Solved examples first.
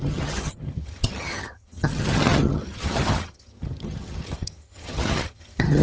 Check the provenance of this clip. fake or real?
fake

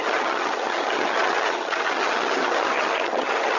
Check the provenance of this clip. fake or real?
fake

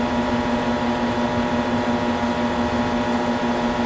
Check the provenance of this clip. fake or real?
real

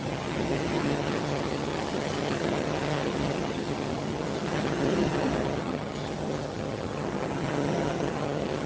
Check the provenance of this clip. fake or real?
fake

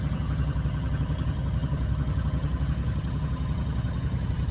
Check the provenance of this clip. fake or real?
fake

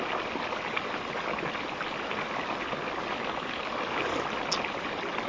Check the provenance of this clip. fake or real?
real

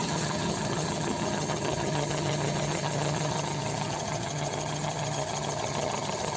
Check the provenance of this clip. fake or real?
fake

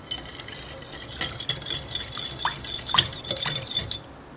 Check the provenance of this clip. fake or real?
real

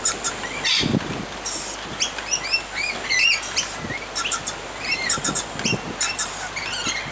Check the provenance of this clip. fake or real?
real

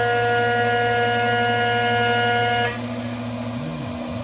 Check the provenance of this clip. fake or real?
real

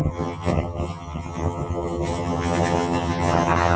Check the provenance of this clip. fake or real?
fake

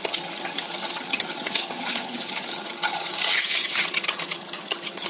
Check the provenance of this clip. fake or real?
fake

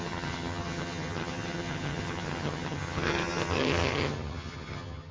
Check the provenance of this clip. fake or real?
fake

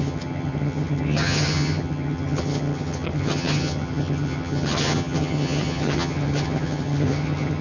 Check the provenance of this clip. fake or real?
fake